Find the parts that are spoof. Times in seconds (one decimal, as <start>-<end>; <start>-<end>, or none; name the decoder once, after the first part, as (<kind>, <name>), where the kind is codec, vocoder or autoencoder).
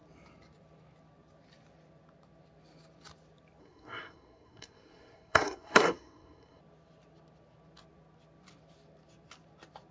3.6-6.6 (codec, SNAC)